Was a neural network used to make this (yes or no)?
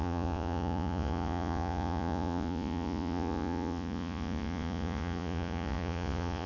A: yes